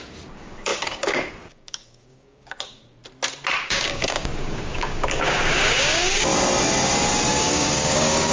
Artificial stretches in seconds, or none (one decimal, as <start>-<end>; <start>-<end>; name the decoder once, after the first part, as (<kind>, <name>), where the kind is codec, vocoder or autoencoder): 0.0-3.0 (codec, DAC); 3.6-6.3; 7.3-8.3